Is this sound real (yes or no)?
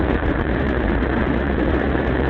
no